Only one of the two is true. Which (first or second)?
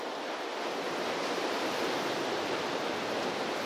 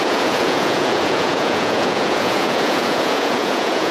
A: first